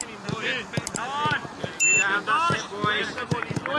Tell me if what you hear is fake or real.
real